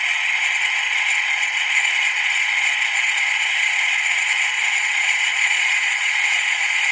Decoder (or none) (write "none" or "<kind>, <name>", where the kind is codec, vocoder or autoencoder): vocoder, Vocos